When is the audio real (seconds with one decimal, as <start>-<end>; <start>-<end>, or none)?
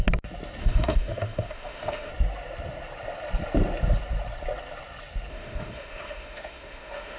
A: 0.0-0.6; 2.1-5.3